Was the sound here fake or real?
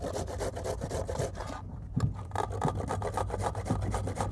real